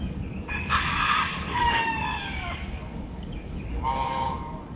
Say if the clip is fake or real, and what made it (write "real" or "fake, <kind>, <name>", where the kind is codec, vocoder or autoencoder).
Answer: fake, codec, DAC